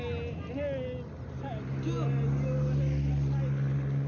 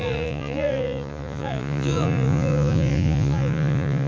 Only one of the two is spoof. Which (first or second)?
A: second